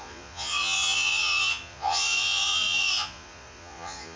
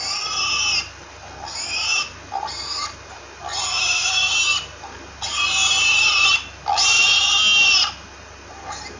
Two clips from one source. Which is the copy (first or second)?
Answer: first